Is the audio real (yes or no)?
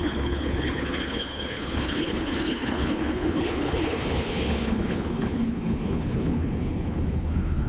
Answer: no